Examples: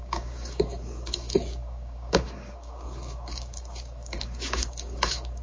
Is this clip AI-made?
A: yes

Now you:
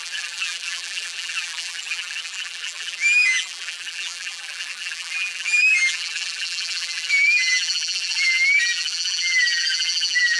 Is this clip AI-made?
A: yes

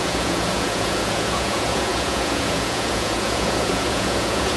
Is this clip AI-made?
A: yes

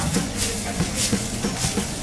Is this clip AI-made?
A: yes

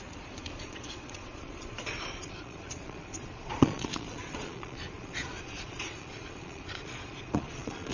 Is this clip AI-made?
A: yes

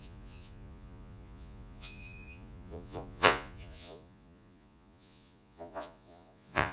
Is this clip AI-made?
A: yes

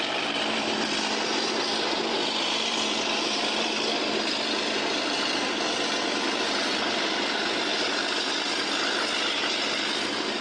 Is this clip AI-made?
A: yes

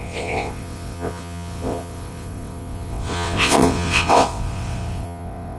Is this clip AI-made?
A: yes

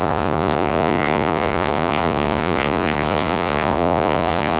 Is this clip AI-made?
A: yes